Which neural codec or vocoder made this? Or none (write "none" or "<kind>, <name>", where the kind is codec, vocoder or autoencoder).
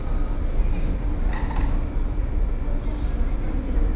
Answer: none